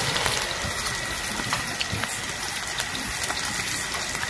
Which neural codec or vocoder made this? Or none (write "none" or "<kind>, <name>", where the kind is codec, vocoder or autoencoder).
none